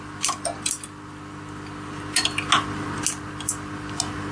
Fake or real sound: real